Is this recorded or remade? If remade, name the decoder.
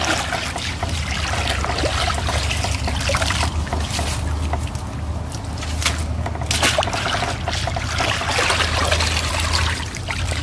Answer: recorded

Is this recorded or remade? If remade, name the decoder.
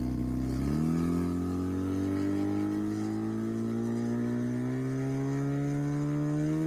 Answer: recorded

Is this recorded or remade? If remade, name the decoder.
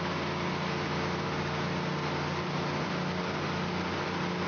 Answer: recorded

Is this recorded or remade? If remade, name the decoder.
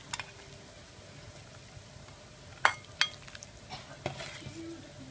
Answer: recorded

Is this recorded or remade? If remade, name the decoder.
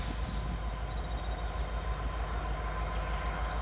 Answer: recorded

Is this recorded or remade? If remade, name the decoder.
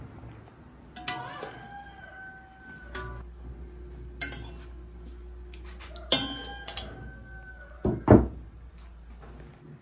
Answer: recorded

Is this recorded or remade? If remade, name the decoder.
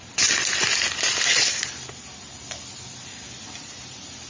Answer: recorded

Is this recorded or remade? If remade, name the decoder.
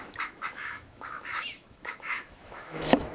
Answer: remade, autoencoder, DAC-VAE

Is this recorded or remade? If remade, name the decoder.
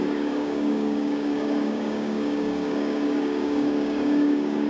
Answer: remade, codec, DAC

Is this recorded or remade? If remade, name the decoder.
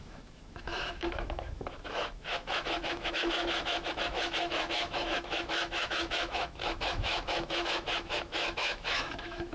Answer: remade, autoencoder, DAC-VAE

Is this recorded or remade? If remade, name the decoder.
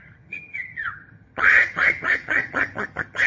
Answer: remade, vocoder, HiFi-GAN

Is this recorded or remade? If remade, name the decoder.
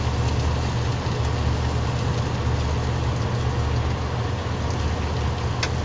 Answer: recorded